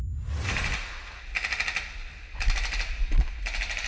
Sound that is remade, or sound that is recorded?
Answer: recorded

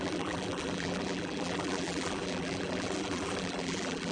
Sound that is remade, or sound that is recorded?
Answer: remade